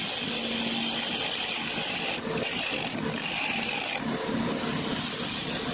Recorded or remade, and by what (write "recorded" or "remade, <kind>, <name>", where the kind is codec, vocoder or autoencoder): recorded